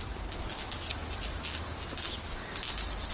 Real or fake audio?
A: real